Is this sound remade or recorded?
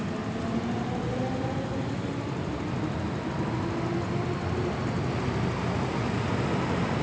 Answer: recorded